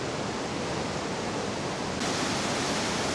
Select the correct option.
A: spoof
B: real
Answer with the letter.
B